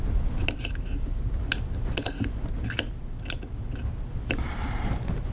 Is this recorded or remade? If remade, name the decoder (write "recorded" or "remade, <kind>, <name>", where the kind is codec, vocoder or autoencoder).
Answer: recorded